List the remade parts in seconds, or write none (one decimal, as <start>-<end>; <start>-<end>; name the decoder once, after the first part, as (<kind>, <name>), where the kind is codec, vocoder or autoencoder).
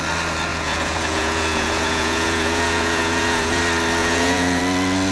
0.5-3.6 (vocoder, Vocos); 4.0-4.6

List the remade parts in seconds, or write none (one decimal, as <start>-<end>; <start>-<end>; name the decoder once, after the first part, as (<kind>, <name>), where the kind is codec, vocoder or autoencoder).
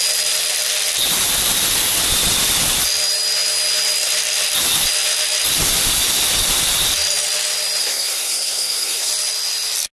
7.8-9.1 (codec, SNAC)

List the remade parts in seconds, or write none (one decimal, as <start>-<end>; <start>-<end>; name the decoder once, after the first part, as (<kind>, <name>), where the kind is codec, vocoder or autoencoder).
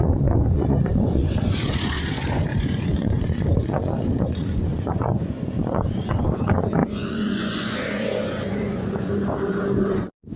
0.0-9.1 (vocoder, Vocos); 10.0-10.4